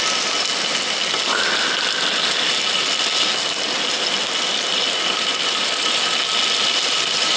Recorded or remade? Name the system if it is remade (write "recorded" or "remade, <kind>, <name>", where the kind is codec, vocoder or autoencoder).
recorded